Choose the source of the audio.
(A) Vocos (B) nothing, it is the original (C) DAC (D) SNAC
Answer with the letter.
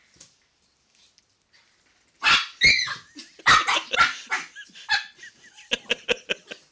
B